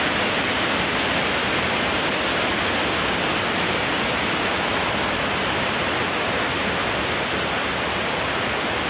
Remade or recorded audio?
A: recorded